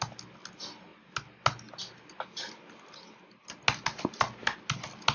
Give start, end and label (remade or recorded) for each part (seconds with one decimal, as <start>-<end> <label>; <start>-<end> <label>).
0.0-5.1 recorded